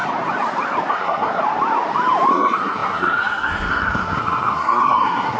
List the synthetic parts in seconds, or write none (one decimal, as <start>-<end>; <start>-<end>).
0.9-1.4; 2.3-5.4